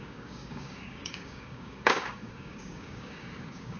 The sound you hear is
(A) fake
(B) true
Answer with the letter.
A